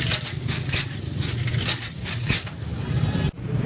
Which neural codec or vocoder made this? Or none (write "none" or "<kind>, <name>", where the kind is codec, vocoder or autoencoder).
none